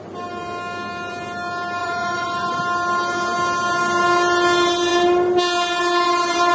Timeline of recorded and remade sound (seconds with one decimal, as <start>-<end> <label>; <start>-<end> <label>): 0.0-1.8 recorded; 1.8-2.6 remade; 2.6-6.5 recorded